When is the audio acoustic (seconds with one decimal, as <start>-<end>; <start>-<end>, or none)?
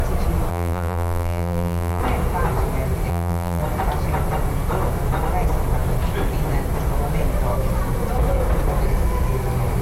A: 0.0-0.5; 2.0-3.1; 3.6-9.8